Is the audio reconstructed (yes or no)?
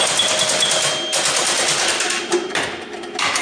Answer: no